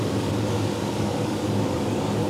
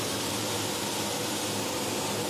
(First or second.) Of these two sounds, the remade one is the first